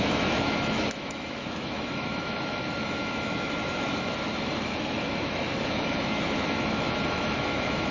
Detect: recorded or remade remade